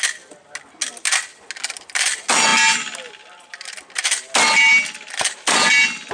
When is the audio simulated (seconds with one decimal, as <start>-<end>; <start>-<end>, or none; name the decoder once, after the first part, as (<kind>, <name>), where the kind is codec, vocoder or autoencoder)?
none